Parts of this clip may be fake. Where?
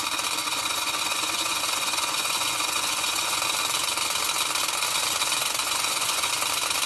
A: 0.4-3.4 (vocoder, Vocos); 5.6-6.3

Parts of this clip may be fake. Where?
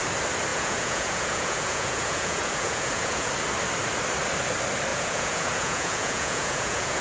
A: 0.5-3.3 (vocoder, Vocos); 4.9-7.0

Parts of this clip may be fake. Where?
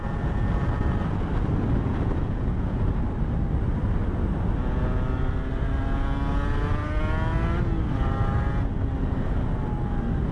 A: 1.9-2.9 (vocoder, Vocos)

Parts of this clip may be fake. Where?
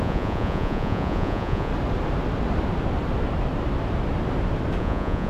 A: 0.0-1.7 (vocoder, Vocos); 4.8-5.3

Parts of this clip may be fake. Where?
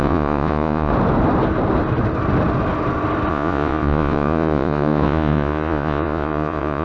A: 0.0-0.9 (vocoder, Vocos); 3.3-6.8